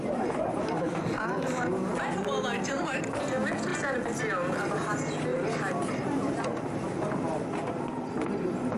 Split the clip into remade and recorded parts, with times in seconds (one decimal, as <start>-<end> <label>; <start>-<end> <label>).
0.0-3.7 recorded; 3.7-4.2 remade; 4.2-5.3 recorded; 5.3-8.8 remade

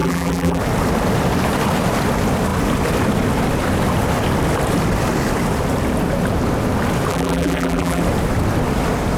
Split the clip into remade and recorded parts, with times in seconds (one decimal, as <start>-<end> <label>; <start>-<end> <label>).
0.0-0.6 remade; 0.6-7.1 recorded; 7.1-8.0 remade; 8.0-9.2 recorded

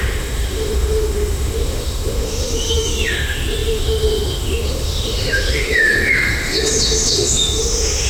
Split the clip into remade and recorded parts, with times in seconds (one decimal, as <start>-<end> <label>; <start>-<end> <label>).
0.0-8.1 remade

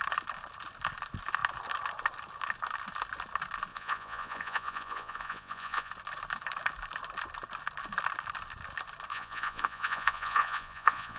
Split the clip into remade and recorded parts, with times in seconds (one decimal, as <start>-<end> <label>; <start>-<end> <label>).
0.0-3.7 recorded; 3.7-5.9 remade; 5.9-9.1 recorded; 9.1-11.2 remade

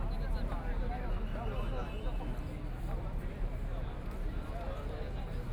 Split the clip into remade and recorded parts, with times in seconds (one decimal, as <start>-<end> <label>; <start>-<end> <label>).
0.0-5.5 recorded